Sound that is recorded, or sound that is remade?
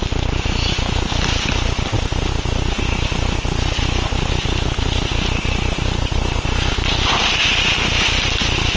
recorded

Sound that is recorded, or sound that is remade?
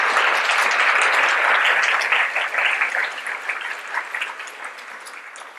recorded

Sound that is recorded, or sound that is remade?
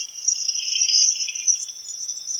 remade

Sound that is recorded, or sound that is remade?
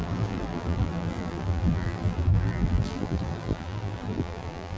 remade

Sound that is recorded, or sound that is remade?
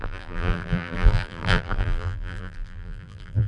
remade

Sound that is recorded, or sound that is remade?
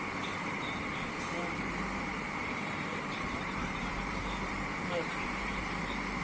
remade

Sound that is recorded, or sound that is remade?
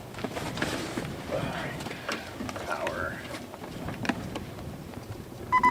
remade